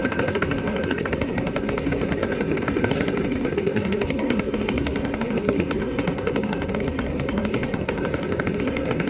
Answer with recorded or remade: remade